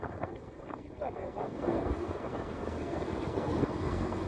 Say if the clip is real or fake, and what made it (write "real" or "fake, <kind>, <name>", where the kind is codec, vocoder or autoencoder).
fake, codec, SNAC